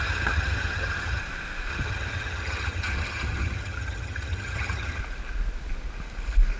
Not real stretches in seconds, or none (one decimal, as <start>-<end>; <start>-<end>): 0.0-1.2; 1.7-5.0